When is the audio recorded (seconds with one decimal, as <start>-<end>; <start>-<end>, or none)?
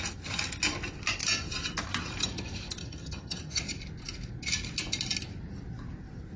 0.0-2.8; 3.8-6.4